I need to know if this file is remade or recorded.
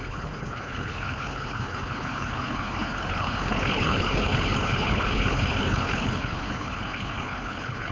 remade